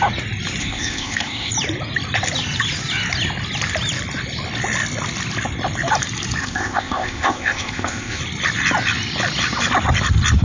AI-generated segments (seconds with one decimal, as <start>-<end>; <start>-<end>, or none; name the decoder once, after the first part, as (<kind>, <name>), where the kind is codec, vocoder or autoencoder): 0.6-1.5 (codec, ZipCodec); 6.4-8.2